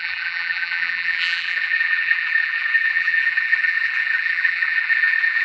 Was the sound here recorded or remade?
remade